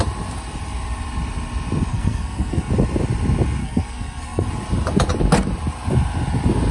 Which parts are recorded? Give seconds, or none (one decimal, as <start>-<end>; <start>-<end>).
0.0-1.9; 2.7-3.6; 4.5-6.7